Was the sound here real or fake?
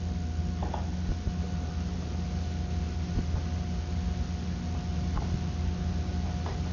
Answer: real